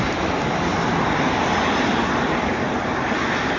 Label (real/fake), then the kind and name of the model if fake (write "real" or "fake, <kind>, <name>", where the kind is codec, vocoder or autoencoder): real